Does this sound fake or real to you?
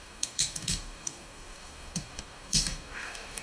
fake